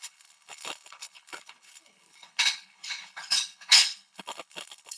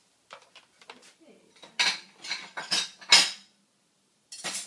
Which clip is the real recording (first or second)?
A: second